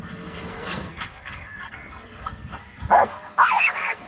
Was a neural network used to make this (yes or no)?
yes